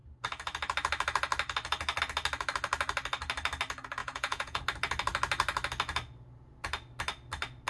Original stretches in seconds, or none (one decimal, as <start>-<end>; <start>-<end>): 0.0-4.0; 4.6-7.7